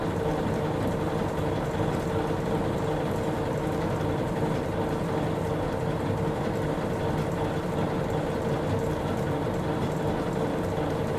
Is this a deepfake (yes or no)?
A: no